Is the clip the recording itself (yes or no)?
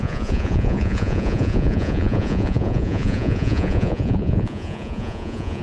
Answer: no